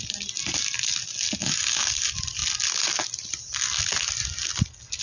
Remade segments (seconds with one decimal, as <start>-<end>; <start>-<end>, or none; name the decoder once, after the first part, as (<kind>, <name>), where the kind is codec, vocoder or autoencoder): 1.4-2.0 (codec, DAC)

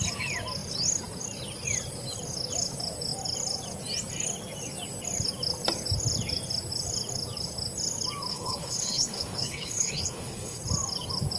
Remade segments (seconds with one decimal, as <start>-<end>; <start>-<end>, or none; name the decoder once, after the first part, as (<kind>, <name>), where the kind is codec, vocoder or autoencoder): 8.3-10.6 (codec, HILCodec)

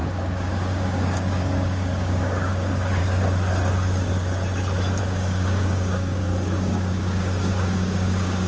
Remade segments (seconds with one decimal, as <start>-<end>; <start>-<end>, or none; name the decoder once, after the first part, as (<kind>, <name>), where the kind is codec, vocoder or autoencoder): 0.0-3.0 (codec, DAC); 5.0-8.5

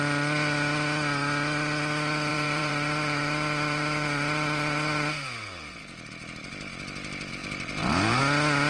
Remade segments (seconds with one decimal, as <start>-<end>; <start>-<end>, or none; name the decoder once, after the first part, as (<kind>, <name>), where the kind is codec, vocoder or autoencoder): 2.3-5.7 (vocoder, BigVGAN v2); 7.4-8.2

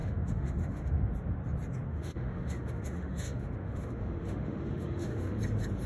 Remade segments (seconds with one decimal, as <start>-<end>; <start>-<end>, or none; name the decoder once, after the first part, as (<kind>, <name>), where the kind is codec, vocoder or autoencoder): 0.0-1.1 (autoencoder, DAC-VAE); 1.9-5.4

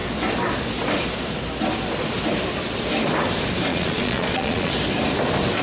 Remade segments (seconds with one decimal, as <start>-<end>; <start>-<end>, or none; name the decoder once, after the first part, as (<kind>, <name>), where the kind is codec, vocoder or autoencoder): 3.7-4.7 (vocoder, Vocos)